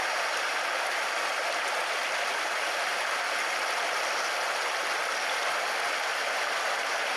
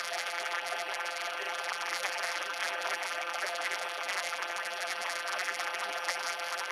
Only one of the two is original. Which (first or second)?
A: first